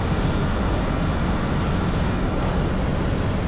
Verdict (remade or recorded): recorded